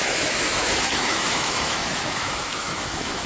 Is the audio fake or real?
fake